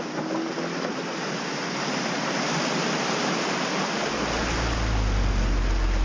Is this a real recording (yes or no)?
yes